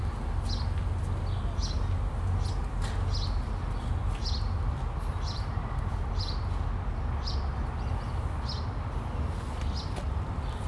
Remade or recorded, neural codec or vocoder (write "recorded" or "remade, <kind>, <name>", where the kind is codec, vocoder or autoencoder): recorded